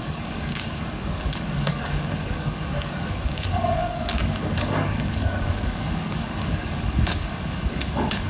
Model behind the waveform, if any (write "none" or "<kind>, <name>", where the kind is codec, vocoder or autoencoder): codec, DAC